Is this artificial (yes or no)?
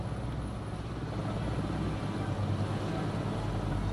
no